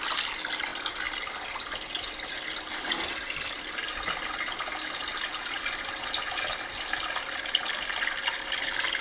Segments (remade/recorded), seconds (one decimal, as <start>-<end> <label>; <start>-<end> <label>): 0.0-9.0 recorded